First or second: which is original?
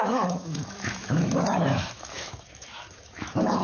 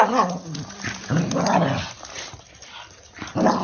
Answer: second